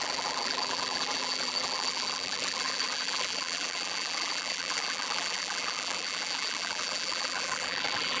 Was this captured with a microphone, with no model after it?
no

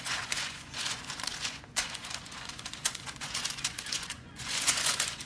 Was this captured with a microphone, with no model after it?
no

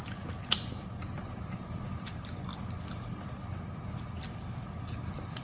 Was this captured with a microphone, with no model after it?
yes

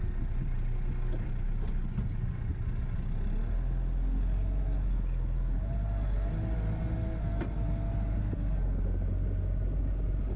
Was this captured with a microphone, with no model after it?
yes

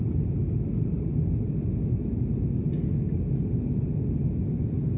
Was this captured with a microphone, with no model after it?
yes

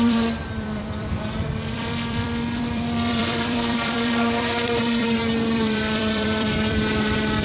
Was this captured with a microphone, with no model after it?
no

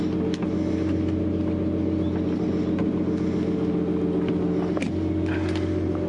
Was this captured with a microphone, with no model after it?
yes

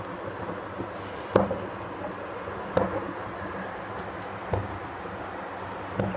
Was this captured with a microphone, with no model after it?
yes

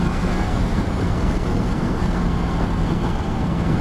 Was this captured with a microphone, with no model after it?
no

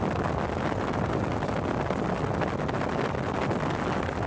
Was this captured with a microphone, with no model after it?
yes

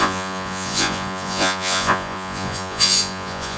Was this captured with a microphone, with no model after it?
no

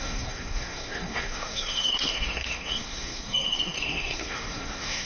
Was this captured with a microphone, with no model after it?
no